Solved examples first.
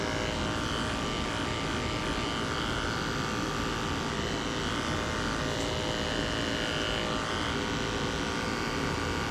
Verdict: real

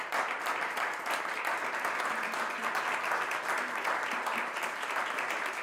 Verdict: real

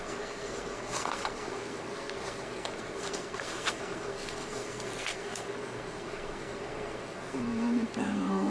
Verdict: fake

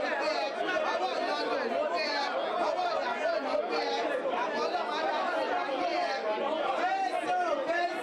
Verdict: real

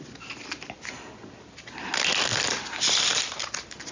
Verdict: real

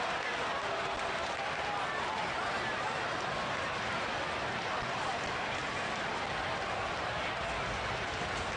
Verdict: real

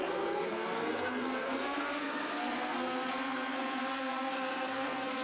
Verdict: fake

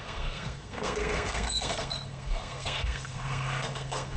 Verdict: fake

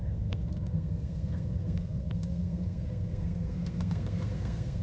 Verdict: fake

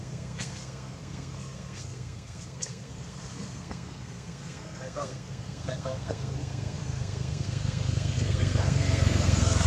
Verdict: fake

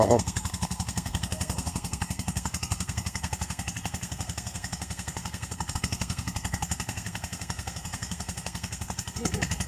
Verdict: fake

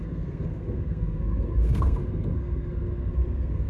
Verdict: fake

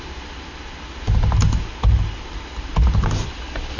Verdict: real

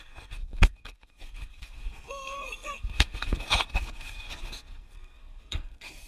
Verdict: fake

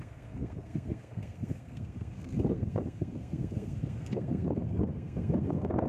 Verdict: fake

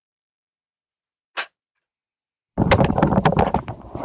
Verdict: real